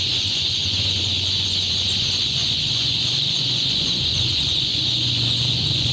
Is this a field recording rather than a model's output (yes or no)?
no